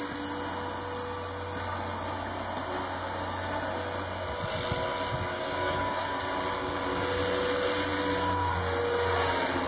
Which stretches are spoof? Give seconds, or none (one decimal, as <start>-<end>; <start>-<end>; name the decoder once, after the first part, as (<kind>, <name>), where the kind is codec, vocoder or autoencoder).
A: 5.3-6.2 (codec, DAC)